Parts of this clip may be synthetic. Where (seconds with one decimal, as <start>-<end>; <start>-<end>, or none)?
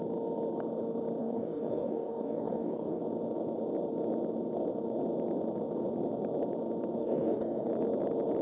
1.2-3.0; 7.0-7.7